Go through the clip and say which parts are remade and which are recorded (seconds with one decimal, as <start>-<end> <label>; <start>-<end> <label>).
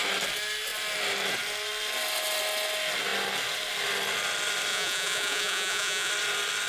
0.0-4.7 recorded; 4.7-6.1 remade; 6.1-6.7 recorded